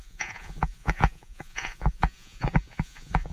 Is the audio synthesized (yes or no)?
yes